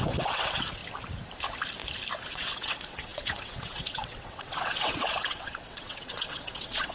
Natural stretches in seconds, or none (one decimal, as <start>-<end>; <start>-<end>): 0.8-2.3